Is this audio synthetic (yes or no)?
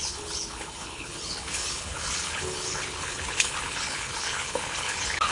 yes